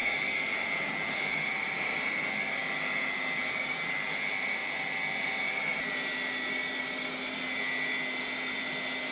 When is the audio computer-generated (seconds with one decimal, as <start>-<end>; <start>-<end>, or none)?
none